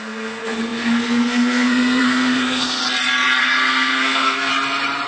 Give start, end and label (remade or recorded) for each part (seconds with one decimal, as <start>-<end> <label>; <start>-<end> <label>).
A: 0.0-2.8 remade; 2.8-3.4 recorded; 3.4-4.5 remade; 4.5-5.1 recorded